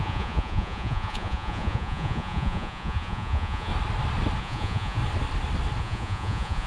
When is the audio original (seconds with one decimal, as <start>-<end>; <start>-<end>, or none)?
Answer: 3.7-4.4; 5.0-5.8